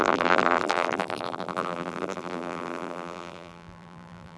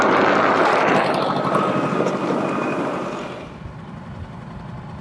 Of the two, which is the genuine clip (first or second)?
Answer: second